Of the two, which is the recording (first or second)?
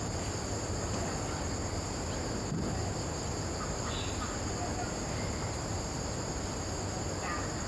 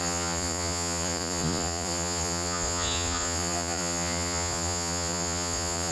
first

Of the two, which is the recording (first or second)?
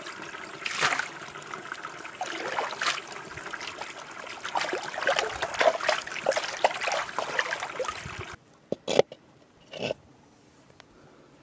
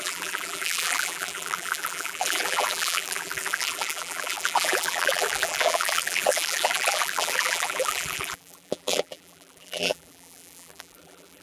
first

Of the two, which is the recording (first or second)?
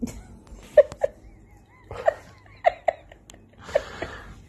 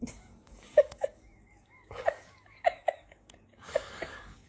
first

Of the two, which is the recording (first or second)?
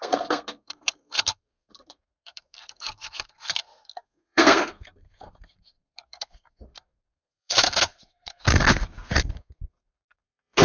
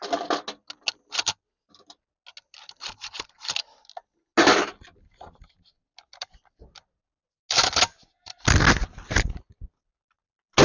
second